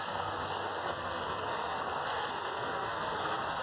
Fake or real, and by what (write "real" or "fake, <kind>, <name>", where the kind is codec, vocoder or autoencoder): fake, codec, SNAC